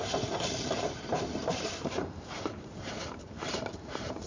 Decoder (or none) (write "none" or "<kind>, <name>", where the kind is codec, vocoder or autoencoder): vocoder, BigVGAN v2